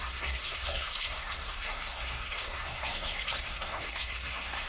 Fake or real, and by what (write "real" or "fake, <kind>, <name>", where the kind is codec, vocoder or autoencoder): fake, codec, SNAC